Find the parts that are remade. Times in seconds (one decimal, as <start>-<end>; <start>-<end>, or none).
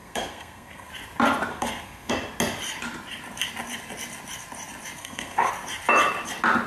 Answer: 0.0-0.9; 1.5-2.1; 5.0-5.5